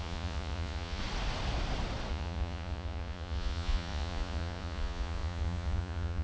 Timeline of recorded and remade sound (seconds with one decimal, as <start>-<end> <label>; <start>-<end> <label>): 0.0-1.0 remade; 1.0-2.1 recorded; 2.1-6.2 remade